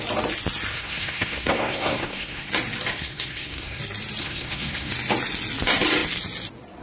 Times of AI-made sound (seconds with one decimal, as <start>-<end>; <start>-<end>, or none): 0.7-2.5; 2.9-3.8; 4.2-4.9